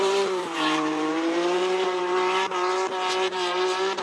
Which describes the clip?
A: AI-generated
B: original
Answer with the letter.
A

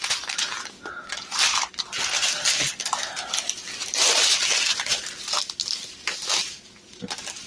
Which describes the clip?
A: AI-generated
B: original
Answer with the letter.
B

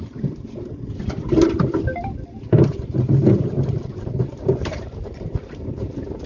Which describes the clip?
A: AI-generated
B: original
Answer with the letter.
A